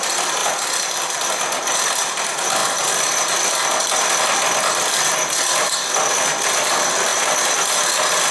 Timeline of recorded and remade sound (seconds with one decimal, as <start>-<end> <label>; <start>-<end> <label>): 0.0-0.4 recorded; 0.4-1.3 remade; 1.3-8.3 recorded